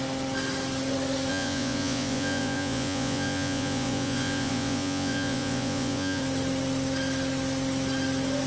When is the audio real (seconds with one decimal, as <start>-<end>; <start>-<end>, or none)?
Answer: 0.0-1.3; 6.2-8.5